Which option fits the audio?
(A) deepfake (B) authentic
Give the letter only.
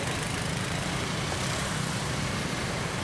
A